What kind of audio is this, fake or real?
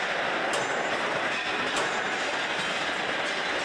real